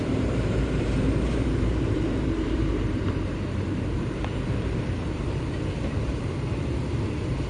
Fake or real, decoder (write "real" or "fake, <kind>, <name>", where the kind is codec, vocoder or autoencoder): fake, vocoder, BigVGAN v2